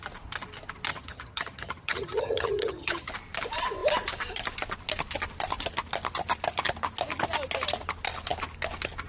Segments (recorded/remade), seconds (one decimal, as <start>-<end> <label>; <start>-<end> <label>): 0.0-0.9 recorded; 0.9-3.1 remade; 3.1-9.1 recorded